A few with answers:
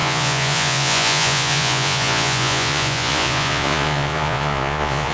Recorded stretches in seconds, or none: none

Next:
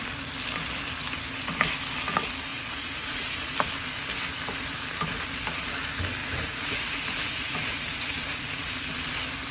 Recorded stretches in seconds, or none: 0.0-2.5; 3.5-6.2; 8.7-9.5

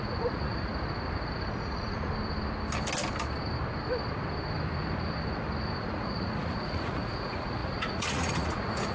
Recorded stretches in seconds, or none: 0.7-1.5; 2.1-5.8

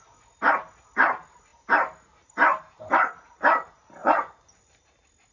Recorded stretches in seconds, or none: 0.0-4.0; 4.7-5.3